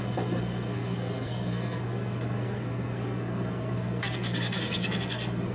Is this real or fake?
fake